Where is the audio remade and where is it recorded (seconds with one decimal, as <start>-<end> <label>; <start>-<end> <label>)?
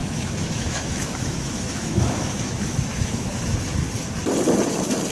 0.0-3.5 remade; 3.5-5.1 recorded